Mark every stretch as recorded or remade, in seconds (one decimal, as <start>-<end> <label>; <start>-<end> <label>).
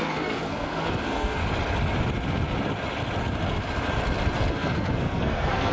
0.0-1.4 remade; 1.4-4.5 recorded; 4.5-5.7 remade